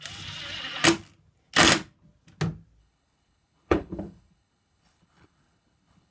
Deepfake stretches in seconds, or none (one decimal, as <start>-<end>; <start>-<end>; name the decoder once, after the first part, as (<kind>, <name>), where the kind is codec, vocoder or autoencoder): 2.8-6.1 (codec, HILCodec)